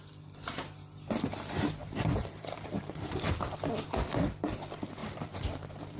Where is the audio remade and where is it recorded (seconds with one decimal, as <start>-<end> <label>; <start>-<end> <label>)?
0.0-1.8 recorded; 1.8-3.4 remade; 3.4-5.0 recorded; 5.0-6.0 remade